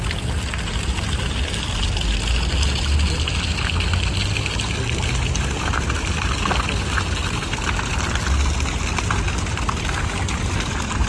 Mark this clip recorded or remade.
recorded